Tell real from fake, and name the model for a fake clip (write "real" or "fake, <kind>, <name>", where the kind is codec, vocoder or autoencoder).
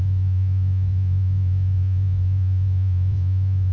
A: fake, vocoder, Vocos